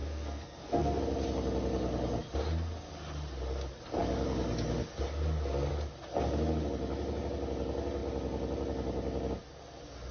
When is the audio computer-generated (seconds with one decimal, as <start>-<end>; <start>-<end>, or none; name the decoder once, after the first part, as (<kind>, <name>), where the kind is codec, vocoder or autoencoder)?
0.0-1.0 (codec, SNAC)